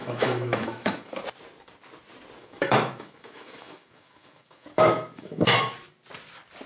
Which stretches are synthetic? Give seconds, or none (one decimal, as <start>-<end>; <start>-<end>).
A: 0.0-1.2; 2.4-5.5